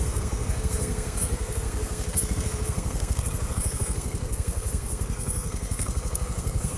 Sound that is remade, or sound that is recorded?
remade